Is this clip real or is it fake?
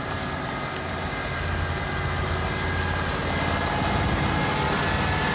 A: real